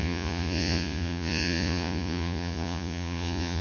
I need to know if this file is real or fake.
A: fake